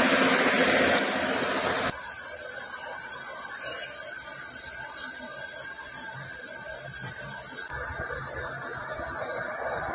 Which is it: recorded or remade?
recorded